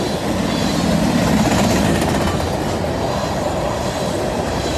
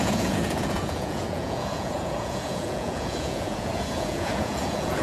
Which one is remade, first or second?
second